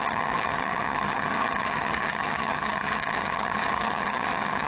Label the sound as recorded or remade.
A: remade